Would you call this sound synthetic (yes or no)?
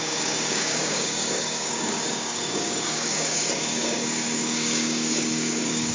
yes